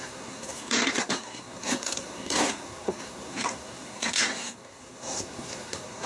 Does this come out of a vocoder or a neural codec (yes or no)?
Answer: yes